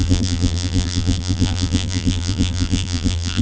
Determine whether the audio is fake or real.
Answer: fake